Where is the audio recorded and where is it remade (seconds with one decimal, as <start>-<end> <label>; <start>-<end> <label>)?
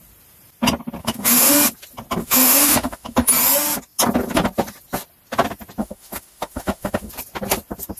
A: 0.0-1.0 recorded; 1.0-1.5 remade; 1.5-2.2 recorded; 2.2-3.3 remade; 3.3-5.8 recorded; 5.8-7.1 remade; 7.1-8.0 recorded